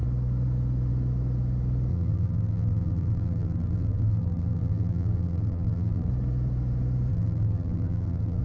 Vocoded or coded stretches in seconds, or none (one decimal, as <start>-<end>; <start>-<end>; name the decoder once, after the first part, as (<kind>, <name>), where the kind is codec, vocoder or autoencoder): 1.9-6.1 (vocoder, BigVGAN v2); 7.1-8.4